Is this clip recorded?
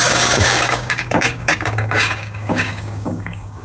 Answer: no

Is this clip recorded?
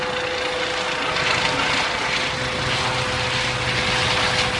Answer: yes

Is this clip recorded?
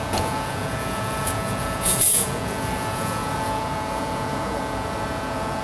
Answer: no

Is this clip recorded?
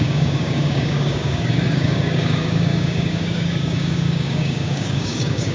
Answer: no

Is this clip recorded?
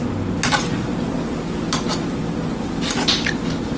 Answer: yes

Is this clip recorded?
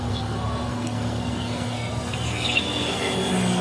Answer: no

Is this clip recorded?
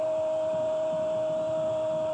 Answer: yes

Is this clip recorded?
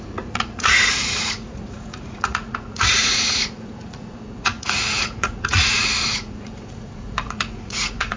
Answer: no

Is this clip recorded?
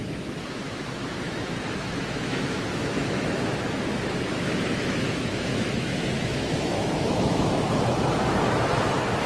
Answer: no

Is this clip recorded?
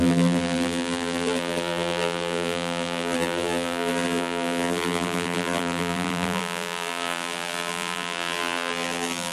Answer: no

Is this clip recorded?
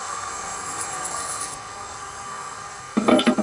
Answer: no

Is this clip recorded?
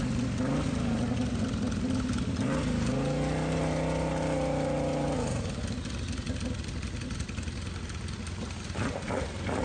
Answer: yes